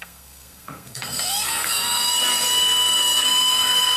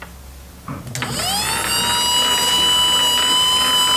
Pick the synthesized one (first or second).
first